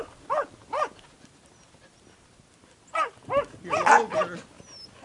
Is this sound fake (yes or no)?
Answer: no